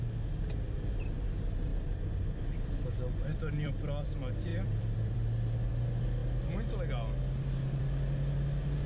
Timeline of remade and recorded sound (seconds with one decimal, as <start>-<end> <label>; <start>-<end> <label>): 0.0-1.7 recorded; 1.7-4.1 remade; 4.1-4.5 recorded; 4.5-5.7 remade; 5.7-8.9 recorded

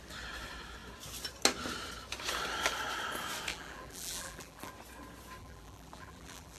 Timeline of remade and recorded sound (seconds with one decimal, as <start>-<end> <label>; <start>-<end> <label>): 0.0-3.5 recorded; 3.5-4.7 remade; 4.7-5.4 recorded; 5.4-6.6 remade

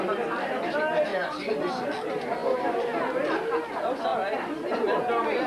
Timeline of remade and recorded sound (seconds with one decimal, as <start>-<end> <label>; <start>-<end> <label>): 0.0-5.5 recorded

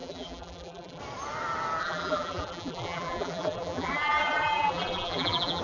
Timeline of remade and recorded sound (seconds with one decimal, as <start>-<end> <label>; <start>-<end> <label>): 0.0-1.0 remade; 1.0-1.8 recorded; 1.8-5.6 remade

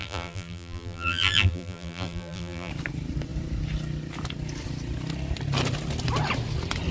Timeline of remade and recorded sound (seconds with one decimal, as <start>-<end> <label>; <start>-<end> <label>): 0.0-2.7 remade; 2.7-6.9 recorded

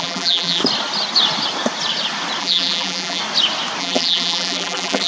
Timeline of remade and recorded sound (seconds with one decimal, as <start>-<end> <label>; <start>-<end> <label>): 0.0-0.6 remade; 0.6-2.4 recorded; 2.4-3.2 remade; 3.2-3.8 recorded; 3.8-5.1 remade

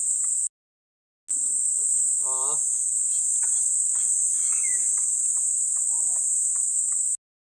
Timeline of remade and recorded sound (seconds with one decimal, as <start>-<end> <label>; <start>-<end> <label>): 0.0-7.4 recorded

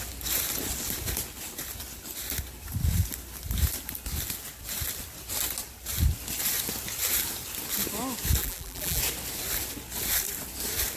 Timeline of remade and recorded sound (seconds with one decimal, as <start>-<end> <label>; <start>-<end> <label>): 0.0-8.4 recorded; 8.4-9.0 remade; 9.0-11.0 recorded